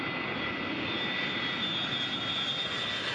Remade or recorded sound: recorded